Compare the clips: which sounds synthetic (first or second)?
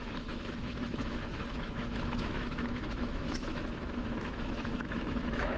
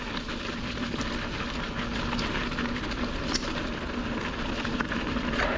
first